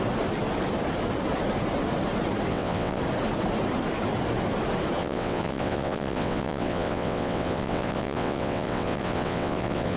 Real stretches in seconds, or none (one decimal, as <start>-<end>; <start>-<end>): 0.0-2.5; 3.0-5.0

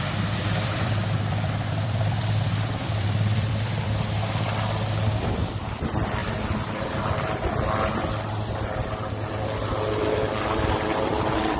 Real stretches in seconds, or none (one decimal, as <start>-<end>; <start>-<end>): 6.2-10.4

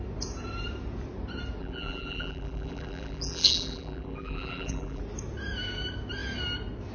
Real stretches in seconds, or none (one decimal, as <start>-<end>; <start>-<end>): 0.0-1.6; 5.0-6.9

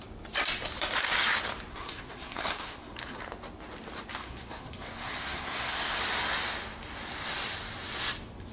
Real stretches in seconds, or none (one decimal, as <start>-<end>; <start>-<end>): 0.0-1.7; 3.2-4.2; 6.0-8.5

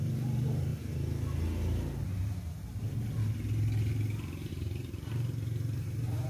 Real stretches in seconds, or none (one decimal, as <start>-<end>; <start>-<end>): 0.7-4.5